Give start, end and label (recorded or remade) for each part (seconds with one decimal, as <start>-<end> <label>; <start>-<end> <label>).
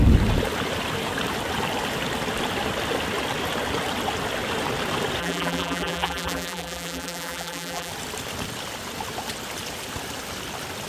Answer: 0.0-5.2 recorded; 5.2-7.9 remade; 7.9-10.9 recorded